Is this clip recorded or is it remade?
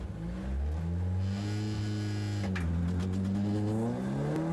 recorded